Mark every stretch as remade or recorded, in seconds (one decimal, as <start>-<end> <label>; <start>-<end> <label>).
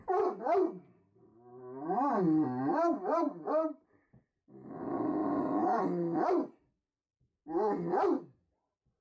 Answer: 0.0-2.7 recorded; 2.7-4.7 remade; 4.7-5.2 recorded; 5.2-5.8 remade; 5.8-9.0 recorded